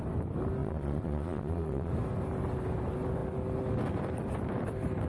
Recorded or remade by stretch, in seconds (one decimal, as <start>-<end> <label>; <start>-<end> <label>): 0.0-0.6 recorded; 0.6-1.9 remade; 1.9-5.1 recorded